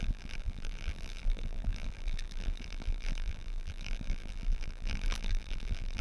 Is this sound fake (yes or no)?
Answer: yes